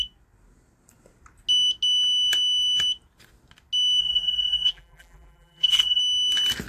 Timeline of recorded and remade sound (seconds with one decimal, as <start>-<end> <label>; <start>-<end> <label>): 0.0-4.0 recorded; 4.0-6.0 remade; 6.0-6.7 recorded